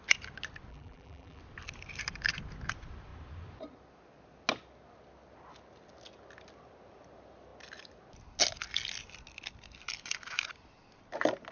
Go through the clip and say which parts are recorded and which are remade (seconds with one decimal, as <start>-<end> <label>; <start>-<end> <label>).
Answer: 0.0-0.7 recorded; 0.7-1.4 remade; 1.4-11.5 recorded